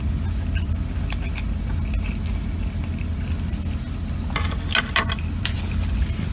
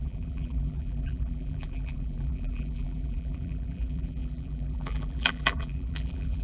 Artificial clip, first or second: second